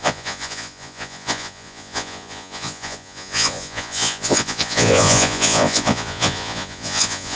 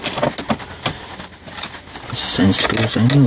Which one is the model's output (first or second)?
first